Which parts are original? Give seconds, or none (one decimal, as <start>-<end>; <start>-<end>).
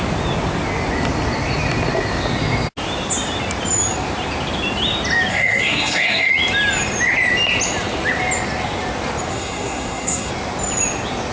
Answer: 0.0-5.3; 6.3-9.3; 10.3-11.3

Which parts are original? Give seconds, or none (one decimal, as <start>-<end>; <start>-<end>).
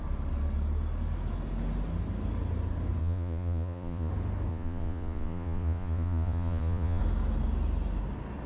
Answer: 0.0-3.0; 4.1-4.5; 7.0-8.5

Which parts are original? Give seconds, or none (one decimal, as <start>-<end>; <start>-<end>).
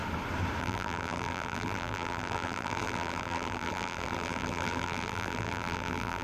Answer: 0.0-0.6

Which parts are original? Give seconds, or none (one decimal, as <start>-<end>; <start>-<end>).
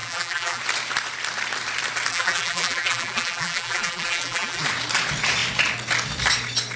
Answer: 0.6-2.1; 4.6-6.8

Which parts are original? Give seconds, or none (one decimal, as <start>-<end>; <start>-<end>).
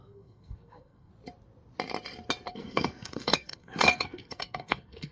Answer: 1.1-2.5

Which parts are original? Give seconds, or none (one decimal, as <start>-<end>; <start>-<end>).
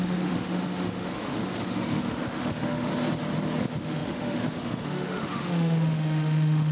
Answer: 2.9-3.6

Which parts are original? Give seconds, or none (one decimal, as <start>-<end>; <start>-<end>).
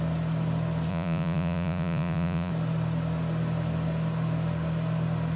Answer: 0.0-0.9; 2.5-5.4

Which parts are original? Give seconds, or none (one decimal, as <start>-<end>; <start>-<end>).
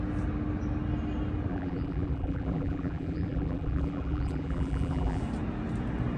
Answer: 0.0-1.5; 5.2-6.2